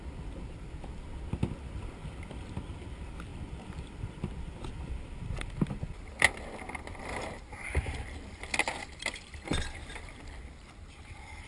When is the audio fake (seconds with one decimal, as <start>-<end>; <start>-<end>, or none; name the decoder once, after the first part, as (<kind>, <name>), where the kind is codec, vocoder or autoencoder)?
none